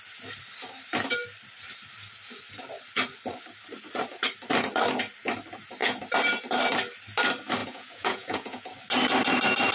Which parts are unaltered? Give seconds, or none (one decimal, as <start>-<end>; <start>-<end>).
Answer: 0.0-7.6; 8.7-9.7